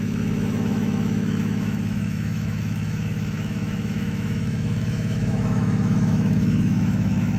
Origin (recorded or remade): remade